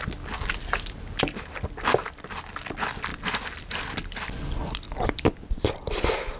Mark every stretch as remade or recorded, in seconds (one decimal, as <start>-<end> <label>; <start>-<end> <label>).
0.0-3.1 recorded; 3.1-5.6 remade; 5.6-6.4 recorded